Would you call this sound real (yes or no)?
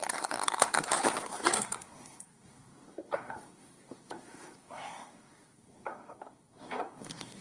no